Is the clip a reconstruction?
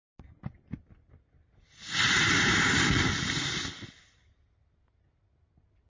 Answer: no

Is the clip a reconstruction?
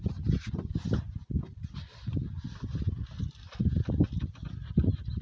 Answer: no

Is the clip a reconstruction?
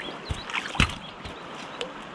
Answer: no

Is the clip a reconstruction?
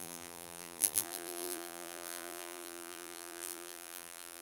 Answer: yes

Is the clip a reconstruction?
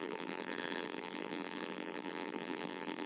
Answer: yes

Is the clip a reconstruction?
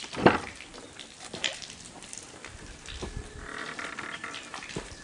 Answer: yes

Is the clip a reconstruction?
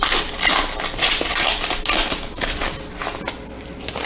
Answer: no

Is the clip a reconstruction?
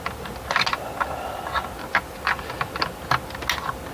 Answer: no